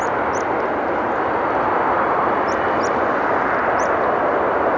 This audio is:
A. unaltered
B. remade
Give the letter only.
A